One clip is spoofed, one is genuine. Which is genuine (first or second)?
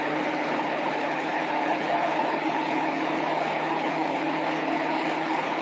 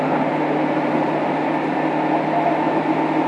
second